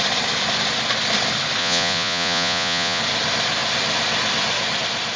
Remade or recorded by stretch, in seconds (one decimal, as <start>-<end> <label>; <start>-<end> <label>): 0.0-1.6 recorded; 1.6-3.0 remade; 3.0-5.2 recorded